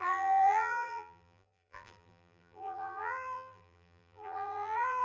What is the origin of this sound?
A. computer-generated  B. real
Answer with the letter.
A